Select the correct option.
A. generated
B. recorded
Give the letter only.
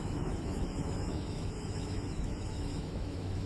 A